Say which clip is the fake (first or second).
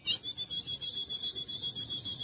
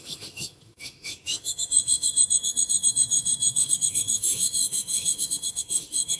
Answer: second